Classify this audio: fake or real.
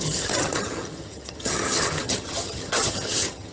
fake